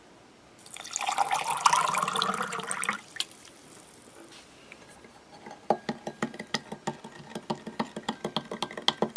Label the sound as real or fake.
real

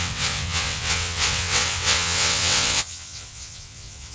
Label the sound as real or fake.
fake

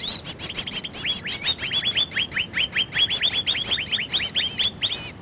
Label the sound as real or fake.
real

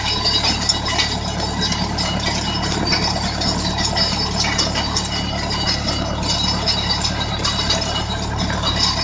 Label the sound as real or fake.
real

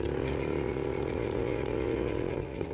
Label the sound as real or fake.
fake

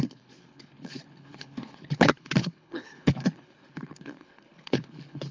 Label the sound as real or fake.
fake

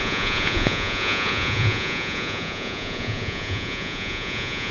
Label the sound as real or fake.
fake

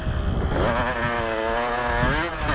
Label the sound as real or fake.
real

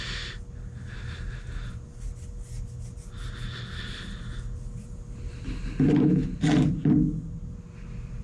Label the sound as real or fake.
real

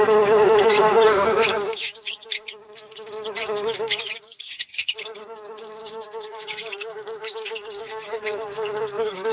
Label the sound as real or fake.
fake